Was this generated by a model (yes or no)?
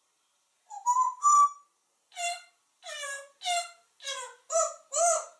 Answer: no